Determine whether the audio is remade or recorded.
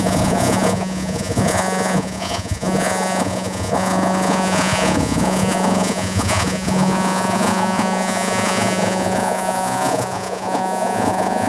remade